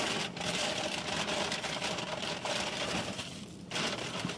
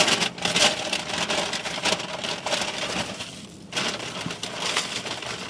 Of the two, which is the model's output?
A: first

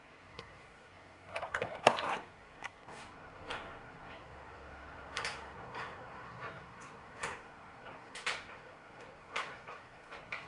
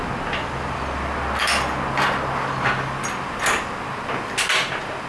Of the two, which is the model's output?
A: first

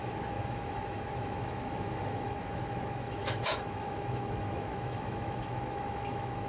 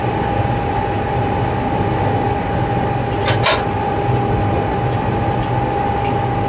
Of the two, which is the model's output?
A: first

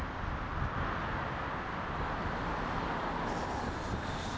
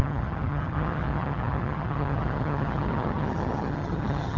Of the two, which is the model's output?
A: second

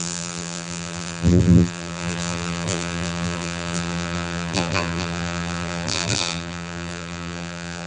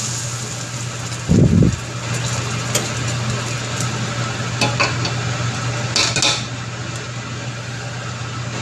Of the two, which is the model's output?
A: first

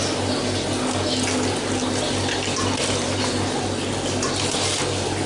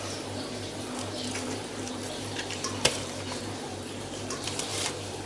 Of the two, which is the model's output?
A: second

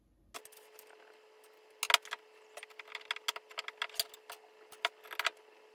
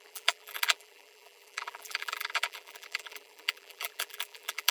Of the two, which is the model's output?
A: second